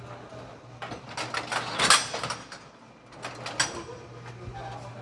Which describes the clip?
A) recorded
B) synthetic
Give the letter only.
A